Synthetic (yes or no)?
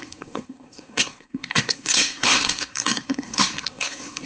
yes